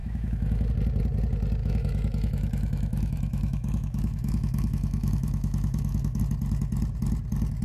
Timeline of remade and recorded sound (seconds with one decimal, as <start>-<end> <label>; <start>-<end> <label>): 0.0-0.7 remade; 0.7-1.6 recorded; 1.6-6.2 remade; 6.2-7.6 recorded